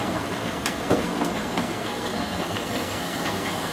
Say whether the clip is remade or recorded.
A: remade